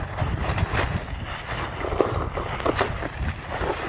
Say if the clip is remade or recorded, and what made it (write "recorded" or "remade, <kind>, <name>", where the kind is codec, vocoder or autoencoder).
recorded